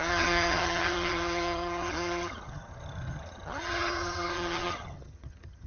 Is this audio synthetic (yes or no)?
yes